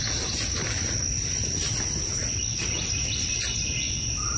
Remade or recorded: recorded